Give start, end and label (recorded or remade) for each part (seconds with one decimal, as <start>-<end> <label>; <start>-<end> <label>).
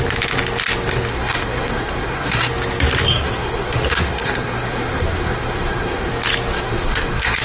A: 0.0-1.1 recorded; 1.1-2.5 remade; 2.5-3.1 recorded; 3.1-6.1 remade; 6.1-6.5 recorded; 6.5-7.4 remade